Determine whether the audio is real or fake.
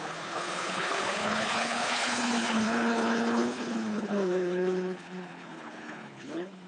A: fake